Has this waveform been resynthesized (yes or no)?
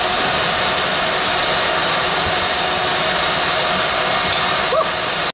no